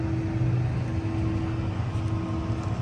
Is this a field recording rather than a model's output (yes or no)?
yes